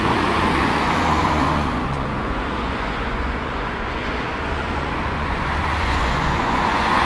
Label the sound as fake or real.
fake